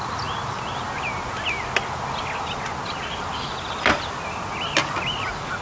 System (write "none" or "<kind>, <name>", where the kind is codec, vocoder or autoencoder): none